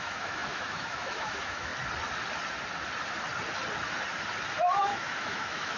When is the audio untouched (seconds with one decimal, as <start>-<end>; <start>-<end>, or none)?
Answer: 1.7-4.8